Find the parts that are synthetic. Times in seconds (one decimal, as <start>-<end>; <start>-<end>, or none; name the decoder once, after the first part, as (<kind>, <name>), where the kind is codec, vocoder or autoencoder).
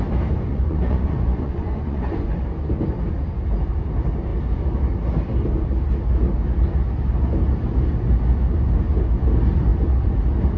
0.5-2.4 (vocoder, Vocos)